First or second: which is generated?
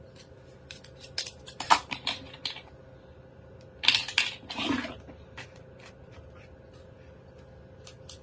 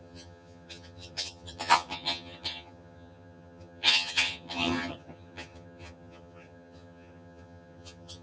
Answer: second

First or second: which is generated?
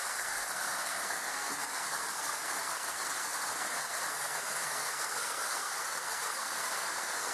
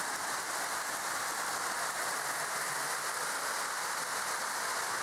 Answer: first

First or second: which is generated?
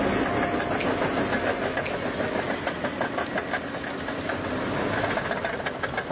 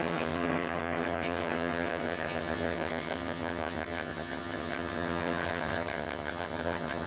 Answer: second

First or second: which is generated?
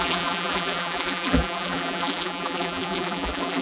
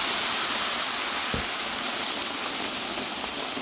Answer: first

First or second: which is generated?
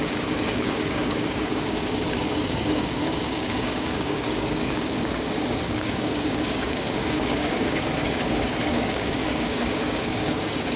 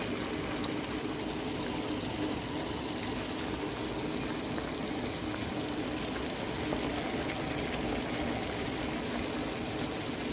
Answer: first